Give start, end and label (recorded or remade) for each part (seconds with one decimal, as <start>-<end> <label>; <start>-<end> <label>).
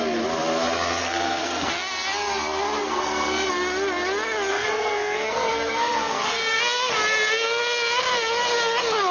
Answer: 0.0-1.0 recorded; 1.0-1.7 remade; 1.7-2.8 recorded; 2.8-3.5 remade; 3.5-4.5 recorded; 4.5-6.6 remade; 6.6-9.1 recorded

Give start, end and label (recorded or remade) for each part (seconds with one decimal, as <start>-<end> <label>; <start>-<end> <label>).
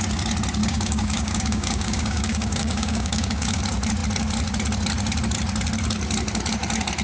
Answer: 0.0-0.6 recorded; 0.6-3.6 remade; 3.6-7.0 recorded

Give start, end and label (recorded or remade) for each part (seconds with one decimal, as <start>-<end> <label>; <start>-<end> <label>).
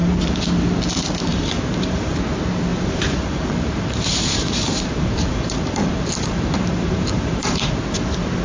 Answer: 0.0-1.3 recorded; 1.3-2.2 remade; 2.2-2.7 recorded; 2.7-7.7 remade; 7.7-8.4 recorded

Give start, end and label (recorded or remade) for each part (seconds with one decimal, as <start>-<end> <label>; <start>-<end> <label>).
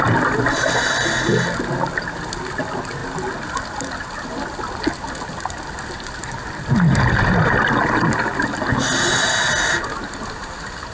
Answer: 0.0-10.9 recorded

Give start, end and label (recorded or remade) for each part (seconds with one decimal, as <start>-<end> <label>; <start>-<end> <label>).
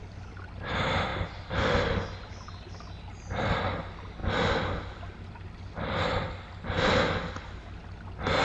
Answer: 0.0-8.4 recorded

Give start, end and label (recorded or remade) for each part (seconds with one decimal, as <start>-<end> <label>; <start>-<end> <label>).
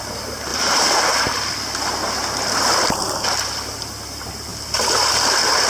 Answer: 0.0-0.5 recorded; 0.5-1.0 remade; 1.0-4.5 recorded; 4.5-5.1 remade; 5.1-5.7 recorded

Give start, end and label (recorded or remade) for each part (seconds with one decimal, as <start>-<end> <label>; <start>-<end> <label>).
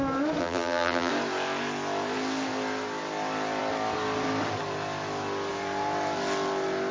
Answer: 0.0-0.4 recorded; 0.4-1.1 remade; 1.1-6.9 recorded